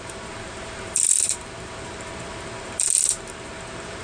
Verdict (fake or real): fake